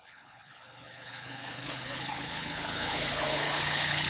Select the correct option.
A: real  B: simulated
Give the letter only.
B